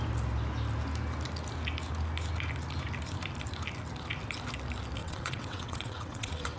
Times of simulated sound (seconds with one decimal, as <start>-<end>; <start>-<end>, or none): 5.0-6.6